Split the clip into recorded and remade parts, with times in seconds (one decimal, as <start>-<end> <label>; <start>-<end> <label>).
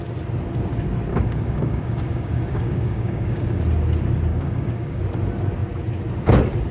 0.0-1.1 recorded; 1.1-3.6 remade; 3.6-4.3 recorded; 4.3-5.0 remade; 5.0-6.7 recorded